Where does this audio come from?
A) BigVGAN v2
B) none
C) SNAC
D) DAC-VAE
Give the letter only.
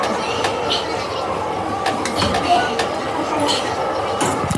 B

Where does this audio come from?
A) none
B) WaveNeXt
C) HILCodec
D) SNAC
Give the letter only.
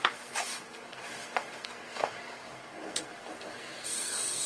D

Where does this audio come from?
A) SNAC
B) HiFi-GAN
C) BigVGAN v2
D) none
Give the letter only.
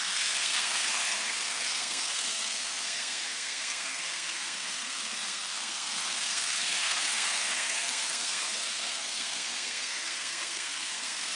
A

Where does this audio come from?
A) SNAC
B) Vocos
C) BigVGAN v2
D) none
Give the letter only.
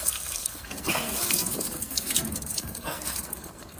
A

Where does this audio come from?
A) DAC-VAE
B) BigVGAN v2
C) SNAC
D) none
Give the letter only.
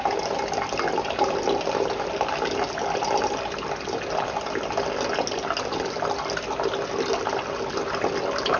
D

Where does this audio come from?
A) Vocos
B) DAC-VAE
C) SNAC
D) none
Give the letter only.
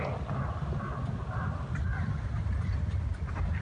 D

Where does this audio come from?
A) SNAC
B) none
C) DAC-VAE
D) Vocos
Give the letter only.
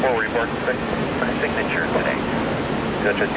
B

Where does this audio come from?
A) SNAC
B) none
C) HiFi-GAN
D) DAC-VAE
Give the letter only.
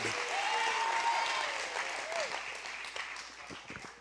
B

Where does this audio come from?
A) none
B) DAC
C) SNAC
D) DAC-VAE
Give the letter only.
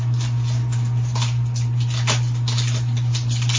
A